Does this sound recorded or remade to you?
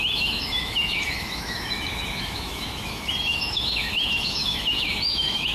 remade